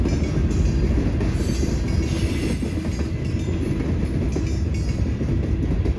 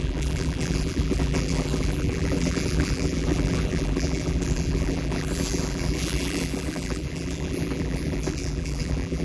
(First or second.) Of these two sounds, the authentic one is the first